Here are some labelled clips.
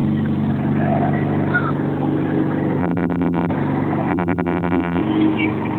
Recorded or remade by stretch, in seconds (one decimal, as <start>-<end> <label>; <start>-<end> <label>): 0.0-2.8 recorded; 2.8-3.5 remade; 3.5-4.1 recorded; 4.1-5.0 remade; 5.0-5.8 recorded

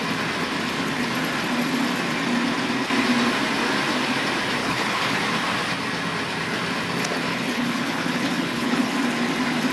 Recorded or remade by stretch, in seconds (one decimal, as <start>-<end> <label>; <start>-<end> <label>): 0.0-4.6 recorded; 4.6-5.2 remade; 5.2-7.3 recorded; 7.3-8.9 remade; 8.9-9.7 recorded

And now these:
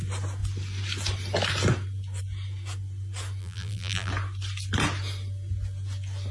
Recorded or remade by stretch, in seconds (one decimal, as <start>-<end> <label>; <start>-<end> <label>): 0.0-3.4 recorded; 3.4-4.1 remade; 4.1-6.3 recorded